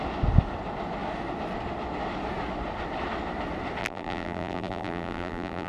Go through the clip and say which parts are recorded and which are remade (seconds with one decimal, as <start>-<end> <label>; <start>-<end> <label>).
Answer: 0.0-3.8 recorded; 3.8-5.7 remade